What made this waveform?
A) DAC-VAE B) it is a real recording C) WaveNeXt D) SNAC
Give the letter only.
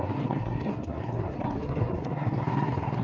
D